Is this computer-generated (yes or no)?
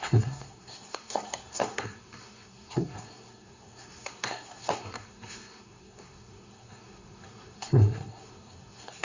yes